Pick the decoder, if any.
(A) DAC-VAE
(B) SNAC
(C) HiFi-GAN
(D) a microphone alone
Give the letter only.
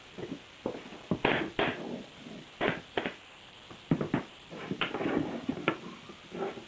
D